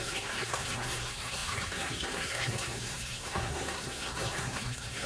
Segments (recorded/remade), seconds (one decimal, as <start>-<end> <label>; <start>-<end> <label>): 0.0-5.1 remade